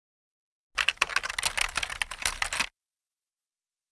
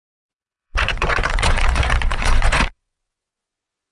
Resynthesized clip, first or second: second